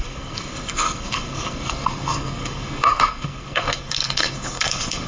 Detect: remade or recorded remade